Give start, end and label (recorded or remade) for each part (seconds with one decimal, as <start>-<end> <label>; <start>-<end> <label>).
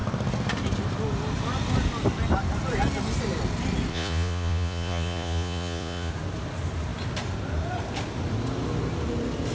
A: 0.0-3.9 recorded; 3.9-6.1 remade; 6.1-9.5 recorded